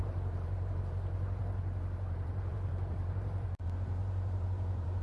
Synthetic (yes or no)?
yes